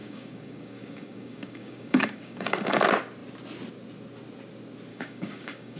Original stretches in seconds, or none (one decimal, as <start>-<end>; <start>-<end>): 2.8-4.9